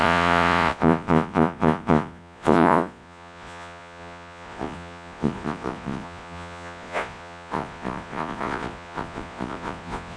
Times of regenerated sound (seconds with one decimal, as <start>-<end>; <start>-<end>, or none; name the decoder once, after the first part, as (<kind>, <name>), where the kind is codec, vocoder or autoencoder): 0.0-10.2 (vocoder, Vocos)